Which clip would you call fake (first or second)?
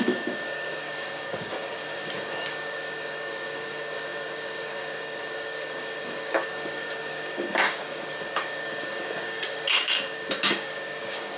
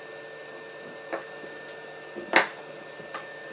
first